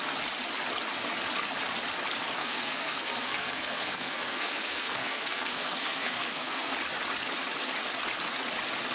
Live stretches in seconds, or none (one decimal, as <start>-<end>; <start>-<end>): 0.0-2.4; 6.7-8.9